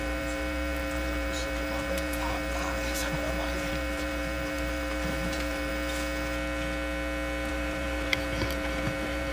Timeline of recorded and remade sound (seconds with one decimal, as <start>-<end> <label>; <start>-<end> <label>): 0.0-5.7 remade; 5.7-7.5 recorded; 7.5-9.3 remade